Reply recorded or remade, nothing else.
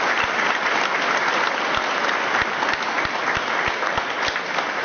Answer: recorded